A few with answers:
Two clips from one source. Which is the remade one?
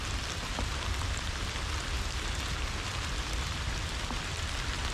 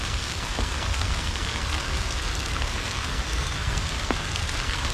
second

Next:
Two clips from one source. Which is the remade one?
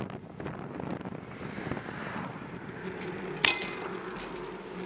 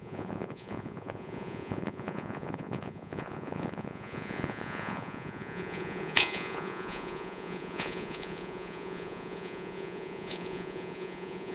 second